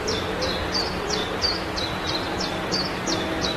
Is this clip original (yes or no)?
no